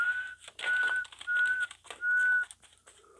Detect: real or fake real